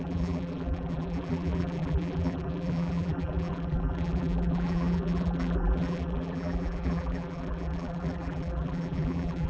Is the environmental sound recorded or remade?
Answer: remade